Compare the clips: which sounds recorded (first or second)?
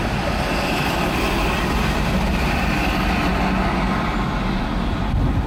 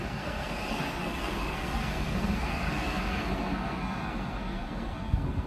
first